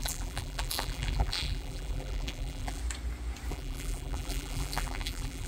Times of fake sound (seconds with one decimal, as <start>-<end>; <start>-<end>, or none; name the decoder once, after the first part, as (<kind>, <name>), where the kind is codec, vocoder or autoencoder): 0.0-2.8 (vocoder, BigVGAN v2); 3.5-5.5